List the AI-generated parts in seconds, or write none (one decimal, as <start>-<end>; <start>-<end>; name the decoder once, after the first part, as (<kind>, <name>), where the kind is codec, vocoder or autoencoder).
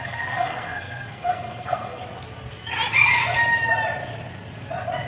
0.0-2.0 (codec, SNAC)